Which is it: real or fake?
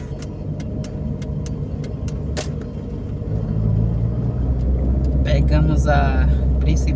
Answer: real